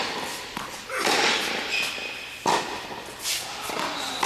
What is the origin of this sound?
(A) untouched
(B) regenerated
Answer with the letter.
A